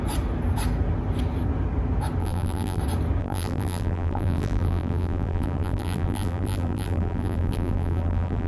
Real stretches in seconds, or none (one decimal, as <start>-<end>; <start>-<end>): 0.0-2.2; 2.8-3.2